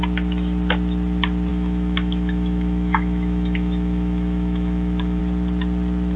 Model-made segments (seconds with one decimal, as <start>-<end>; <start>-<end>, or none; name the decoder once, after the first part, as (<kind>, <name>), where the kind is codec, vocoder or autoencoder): 1.5-5.2 (autoencoder, DAC-VAE)